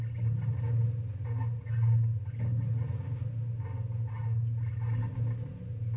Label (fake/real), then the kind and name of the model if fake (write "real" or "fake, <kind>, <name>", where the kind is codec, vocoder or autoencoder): real